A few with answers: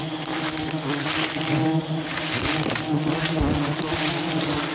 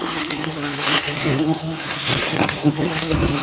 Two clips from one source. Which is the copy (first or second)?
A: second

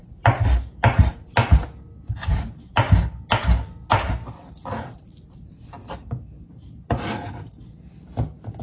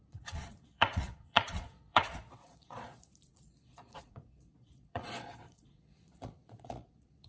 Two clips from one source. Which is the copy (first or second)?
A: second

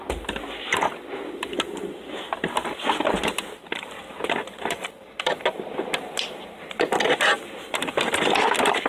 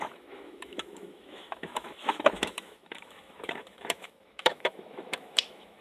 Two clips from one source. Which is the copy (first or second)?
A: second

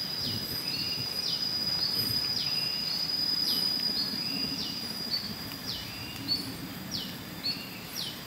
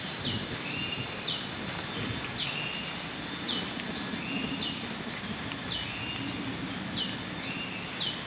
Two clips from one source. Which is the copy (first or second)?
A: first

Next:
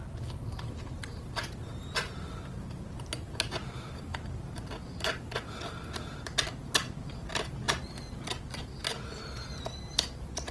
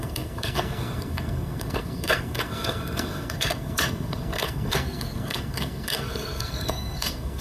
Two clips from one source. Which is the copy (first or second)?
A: second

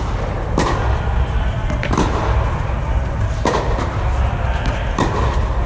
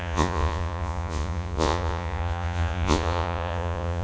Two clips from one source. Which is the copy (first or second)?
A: second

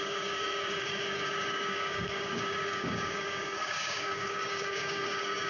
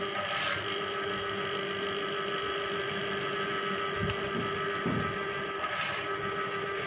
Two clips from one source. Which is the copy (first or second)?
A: first